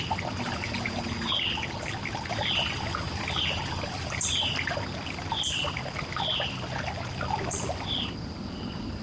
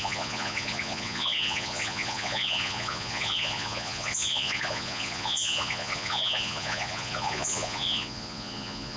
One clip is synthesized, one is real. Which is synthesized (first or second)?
second